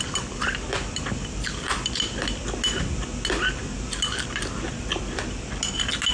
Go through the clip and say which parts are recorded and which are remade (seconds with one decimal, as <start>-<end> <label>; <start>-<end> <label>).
0.0-6.1 recorded